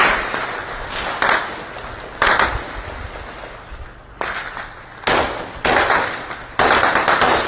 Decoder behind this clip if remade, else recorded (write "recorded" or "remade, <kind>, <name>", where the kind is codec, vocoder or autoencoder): recorded